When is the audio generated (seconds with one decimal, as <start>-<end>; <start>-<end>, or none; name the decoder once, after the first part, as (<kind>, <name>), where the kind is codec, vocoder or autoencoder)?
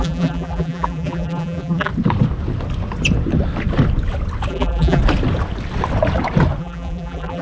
0.0-1.9 (vocoder, BigVGAN v2); 4.5-5.0; 6.6-7.4